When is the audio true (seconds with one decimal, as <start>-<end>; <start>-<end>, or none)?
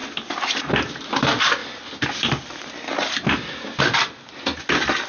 0.0-5.1